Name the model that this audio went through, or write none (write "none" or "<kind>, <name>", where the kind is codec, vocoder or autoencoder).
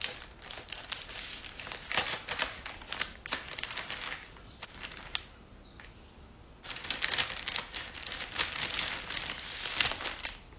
none